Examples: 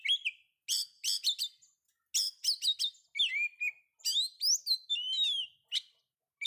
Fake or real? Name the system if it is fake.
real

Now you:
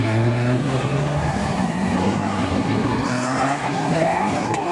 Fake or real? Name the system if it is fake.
fake, codec, SNAC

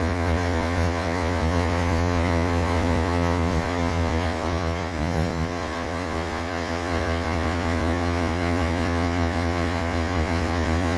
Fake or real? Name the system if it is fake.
fake, vocoder, Vocos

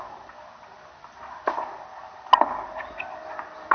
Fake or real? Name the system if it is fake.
real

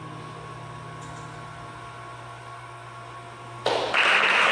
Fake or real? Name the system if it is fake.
real